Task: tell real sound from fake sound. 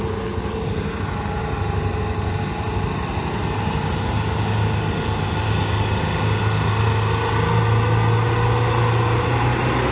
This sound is real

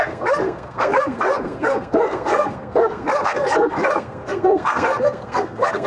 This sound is fake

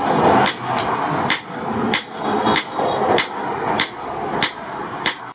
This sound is real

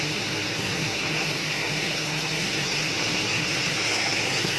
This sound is fake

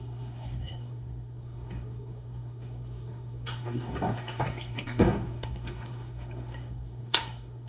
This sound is fake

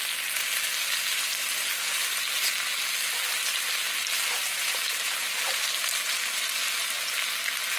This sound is real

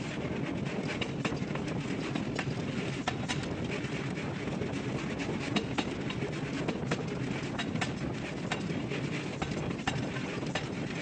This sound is real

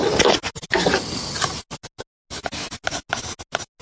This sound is real